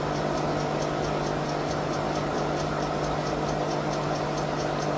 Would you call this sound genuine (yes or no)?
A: yes